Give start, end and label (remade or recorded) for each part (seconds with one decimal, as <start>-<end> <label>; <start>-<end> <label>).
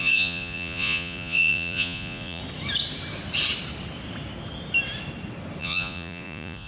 0.0-2.4 remade; 2.4-5.6 recorded; 5.6-6.7 remade